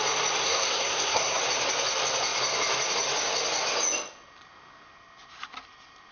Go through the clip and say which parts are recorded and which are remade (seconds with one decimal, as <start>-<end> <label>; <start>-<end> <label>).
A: 0.0-0.4 recorded; 0.4-1.4 remade; 1.4-6.1 recorded